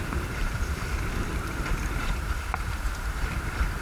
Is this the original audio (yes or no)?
no